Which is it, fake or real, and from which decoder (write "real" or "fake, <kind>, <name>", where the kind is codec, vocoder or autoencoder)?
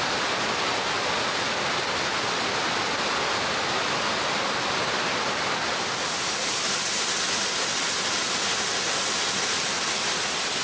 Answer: real